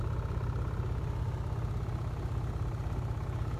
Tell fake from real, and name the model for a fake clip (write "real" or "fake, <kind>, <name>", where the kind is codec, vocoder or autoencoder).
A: real